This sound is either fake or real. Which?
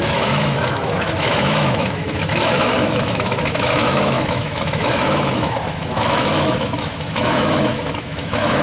fake